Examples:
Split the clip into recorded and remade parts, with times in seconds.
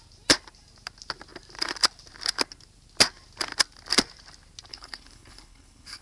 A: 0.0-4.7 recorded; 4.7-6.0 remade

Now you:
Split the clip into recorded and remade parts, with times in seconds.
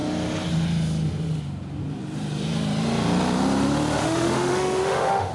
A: 0.0-4.0 recorded; 4.0-5.3 remade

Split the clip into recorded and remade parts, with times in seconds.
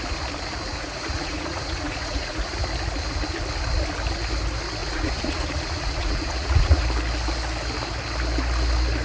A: 0.0-0.7 recorded; 0.7-2.5 remade; 2.5-4.8 recorded; 4.8-6.8 remade; 6.8-9.0 recorded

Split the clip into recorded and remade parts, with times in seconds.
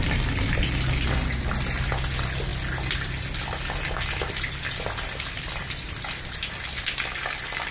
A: 0.0-7.7 recorded